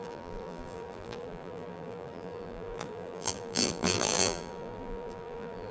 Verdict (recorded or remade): remade